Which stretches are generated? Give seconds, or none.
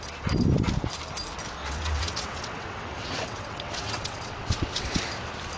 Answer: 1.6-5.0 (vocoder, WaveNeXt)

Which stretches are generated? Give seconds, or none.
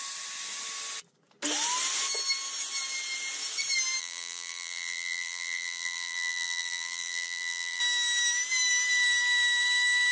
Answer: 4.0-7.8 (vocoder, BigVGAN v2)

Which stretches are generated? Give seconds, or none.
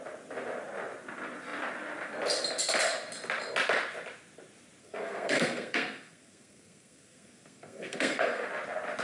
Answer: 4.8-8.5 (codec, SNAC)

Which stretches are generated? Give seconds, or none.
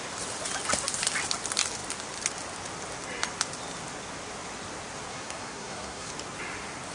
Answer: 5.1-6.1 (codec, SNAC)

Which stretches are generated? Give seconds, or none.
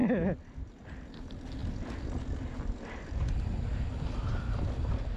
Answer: none